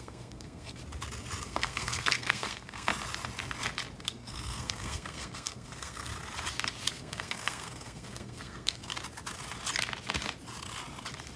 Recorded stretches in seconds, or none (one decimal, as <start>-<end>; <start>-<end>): 0.8-1.4; 2.9-4.0; 6.1-6.9; 8.9-11.4